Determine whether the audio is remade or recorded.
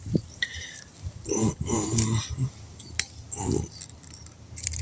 recorded